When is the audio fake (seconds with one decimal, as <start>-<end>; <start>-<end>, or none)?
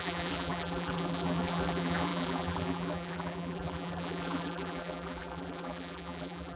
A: 0.0-6.6